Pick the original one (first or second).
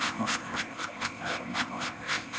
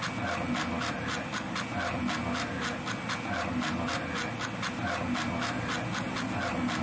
second